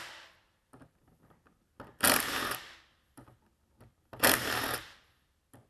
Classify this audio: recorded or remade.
recorded